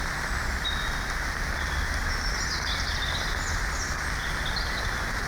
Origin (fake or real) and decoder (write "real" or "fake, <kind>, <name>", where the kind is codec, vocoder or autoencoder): real